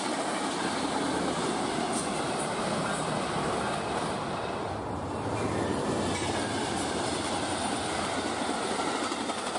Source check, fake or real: real